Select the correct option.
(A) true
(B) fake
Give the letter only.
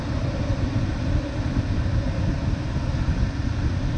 A